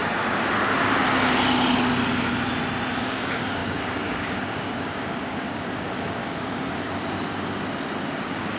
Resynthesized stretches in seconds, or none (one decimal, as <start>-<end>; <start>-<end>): 3.0-6.2; 8.0-8.6